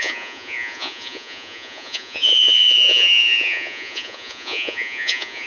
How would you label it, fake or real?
fake